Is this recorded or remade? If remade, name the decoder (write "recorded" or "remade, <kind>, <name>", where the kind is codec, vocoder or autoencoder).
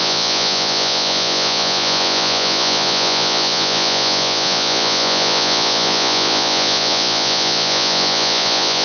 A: remade, vocoder, Vocos